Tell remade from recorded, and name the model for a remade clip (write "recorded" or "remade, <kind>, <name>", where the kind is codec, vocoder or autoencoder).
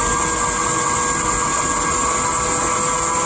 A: recorded